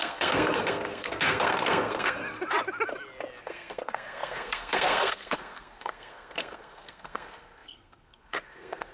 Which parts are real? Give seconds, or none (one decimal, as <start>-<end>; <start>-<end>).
2.2-3.4